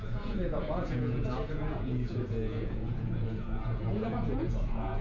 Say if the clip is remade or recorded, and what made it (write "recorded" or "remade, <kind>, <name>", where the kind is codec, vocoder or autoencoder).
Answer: remade, vocoder, Vocos